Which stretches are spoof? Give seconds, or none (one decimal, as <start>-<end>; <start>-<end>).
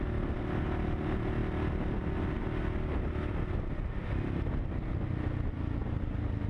none